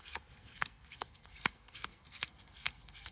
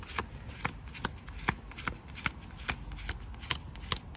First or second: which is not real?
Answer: first